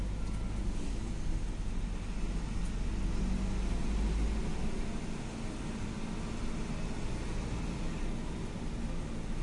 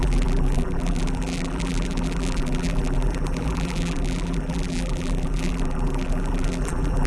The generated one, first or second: second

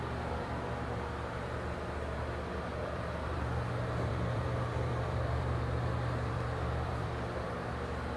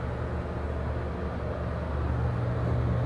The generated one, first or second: first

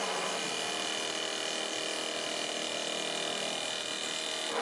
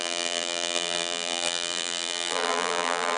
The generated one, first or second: second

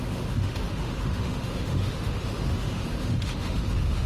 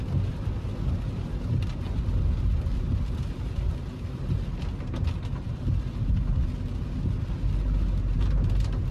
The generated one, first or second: first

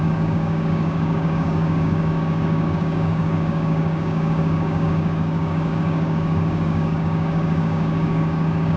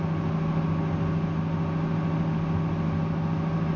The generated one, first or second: first